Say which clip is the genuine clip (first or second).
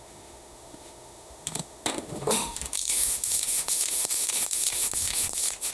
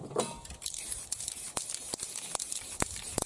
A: second